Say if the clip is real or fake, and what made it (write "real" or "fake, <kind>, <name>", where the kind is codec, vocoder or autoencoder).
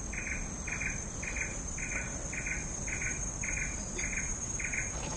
real